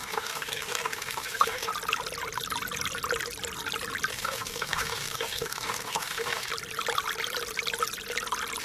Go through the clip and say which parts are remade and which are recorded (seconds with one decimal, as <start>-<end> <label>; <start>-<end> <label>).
0.0-1.7 remade; 1.7-4.1 recorded; 4.1-6.5 remade; 6.5-8.6 recorded